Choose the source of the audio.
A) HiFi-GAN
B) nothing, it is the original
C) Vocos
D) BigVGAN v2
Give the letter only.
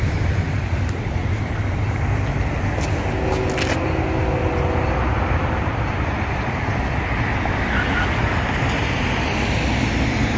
B